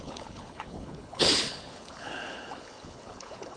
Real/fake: fake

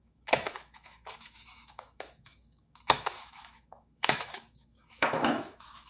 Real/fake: fake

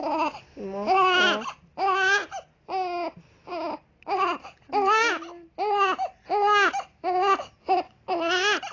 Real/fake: real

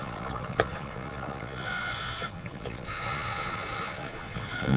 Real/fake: fake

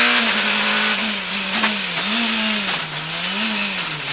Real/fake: real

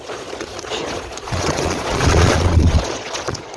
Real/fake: fake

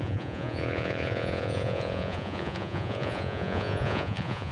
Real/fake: fake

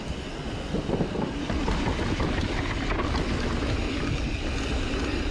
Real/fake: real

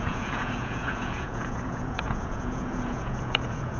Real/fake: fake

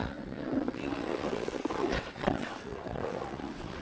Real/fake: fake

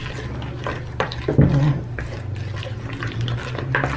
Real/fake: real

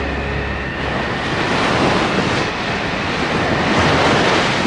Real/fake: real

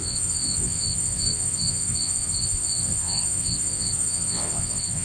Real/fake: fake